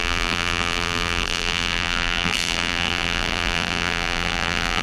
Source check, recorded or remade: remade